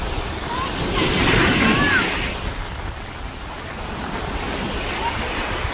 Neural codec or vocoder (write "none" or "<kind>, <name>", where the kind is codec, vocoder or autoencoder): none